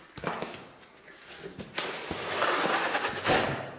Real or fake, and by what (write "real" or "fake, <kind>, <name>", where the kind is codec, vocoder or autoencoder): real